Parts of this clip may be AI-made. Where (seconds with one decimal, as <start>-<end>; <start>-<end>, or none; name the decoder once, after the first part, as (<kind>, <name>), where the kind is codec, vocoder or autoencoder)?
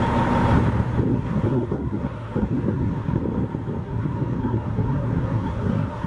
1.1-3.2 (codec, SNAC); 3.8-6.1